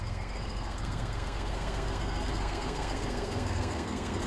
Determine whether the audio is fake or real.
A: fake